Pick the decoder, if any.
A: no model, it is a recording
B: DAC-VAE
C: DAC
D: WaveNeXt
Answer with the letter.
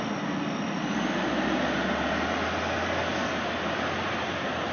A